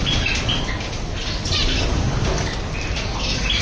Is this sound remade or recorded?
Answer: recorded